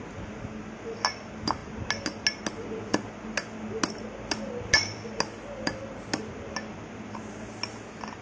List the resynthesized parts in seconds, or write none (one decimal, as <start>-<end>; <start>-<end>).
none